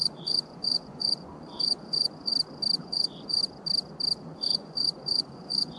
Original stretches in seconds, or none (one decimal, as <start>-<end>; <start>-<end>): 2.3-2.8; 3.4-4.2